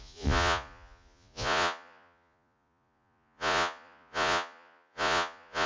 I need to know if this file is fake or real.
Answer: fake